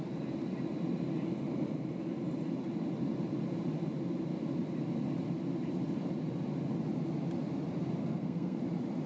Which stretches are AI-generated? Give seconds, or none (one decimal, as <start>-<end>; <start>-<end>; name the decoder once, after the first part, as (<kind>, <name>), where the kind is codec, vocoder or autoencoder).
8.0-8.6 (codec, SNAC)